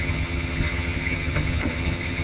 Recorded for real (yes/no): no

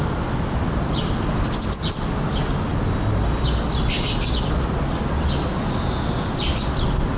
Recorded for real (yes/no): yes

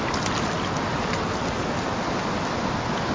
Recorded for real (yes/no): yes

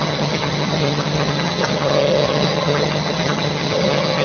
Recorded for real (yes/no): no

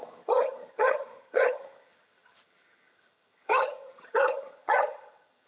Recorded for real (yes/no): no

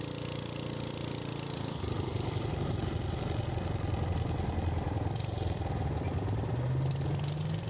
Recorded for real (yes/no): yes